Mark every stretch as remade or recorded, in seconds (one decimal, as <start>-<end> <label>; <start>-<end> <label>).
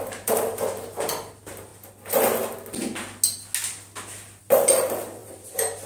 0.0-1.7 remade; 1.7-4.4 recorded; 4.4-5.9 remade